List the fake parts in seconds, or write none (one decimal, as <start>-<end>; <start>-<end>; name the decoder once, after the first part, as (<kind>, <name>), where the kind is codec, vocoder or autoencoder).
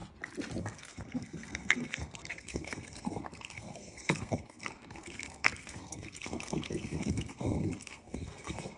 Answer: 0.6-8.8 (codec, SNAC)